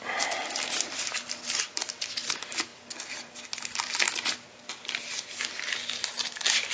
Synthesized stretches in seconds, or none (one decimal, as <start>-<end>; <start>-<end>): none